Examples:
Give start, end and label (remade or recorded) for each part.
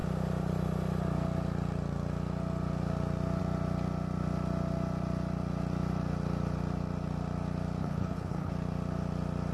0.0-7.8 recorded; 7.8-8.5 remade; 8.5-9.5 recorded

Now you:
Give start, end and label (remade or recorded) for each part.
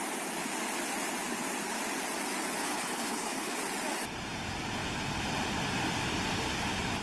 0.0-2.6 recorded; 2.6-3.6 remade; 3.6-7.0 recorded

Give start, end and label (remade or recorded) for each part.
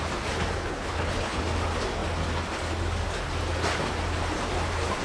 0.0-0.6 recorded; 0.6-1.4 remade; 1.4-5.0 recorded